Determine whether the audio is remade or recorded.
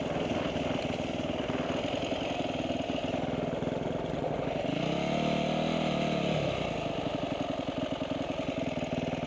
recorded